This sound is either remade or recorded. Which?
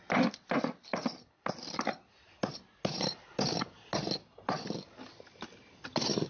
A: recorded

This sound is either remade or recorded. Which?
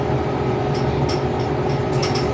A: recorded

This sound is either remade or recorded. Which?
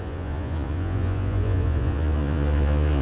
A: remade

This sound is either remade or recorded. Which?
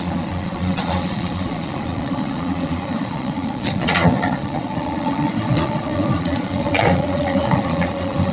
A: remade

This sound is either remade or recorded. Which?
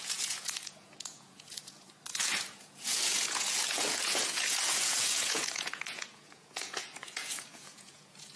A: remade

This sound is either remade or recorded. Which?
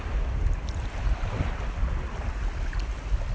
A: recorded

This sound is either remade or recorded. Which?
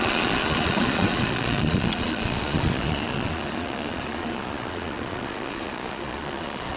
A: remade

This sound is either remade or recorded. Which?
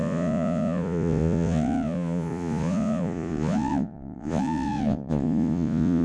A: remade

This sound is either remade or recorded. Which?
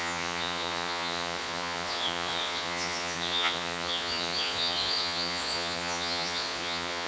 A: remade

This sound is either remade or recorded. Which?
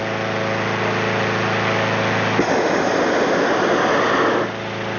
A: recorded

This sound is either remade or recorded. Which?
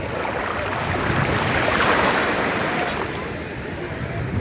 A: recorded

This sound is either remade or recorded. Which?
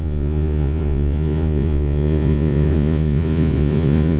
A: remade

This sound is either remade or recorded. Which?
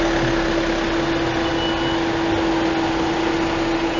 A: recorded